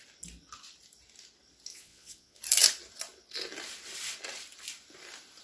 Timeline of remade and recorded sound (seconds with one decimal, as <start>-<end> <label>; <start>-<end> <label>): 0.0-1.7 recorded; 1.7-2.4 remade; 2.4-5.4 recorded